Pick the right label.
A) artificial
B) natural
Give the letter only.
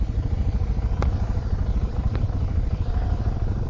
A